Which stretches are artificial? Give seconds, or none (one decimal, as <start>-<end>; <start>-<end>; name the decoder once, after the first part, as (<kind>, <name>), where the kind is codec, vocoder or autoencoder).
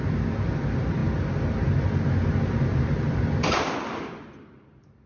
none